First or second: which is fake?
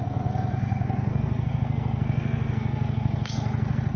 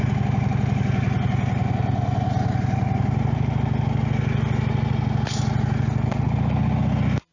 first